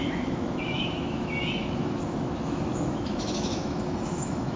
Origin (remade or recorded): remade